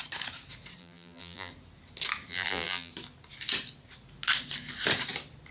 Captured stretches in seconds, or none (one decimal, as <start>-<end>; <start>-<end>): 0.0-0.8; 1.5-2.3; 2.9-5.5